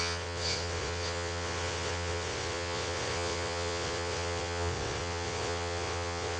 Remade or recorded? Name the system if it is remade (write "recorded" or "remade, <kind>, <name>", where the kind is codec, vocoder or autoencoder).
remade, vocoder, WaveNeXt